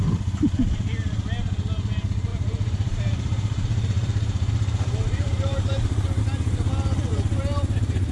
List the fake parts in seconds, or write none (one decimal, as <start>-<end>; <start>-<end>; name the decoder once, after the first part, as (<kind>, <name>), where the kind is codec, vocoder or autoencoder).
2.3-6.2 (vocoder, BigVGAN v2); 7.1-8.1